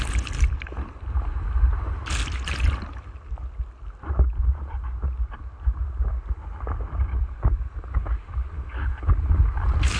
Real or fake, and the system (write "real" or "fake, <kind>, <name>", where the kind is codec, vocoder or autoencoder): real